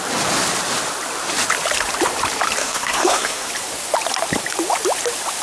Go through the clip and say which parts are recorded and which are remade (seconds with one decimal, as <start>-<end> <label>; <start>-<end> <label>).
0.0-2.6 recorded; 2.6-3.5 remade; 3.5-5.4 recorded